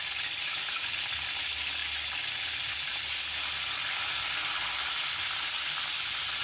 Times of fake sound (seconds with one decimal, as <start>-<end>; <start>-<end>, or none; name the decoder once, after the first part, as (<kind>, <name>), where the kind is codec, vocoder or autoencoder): none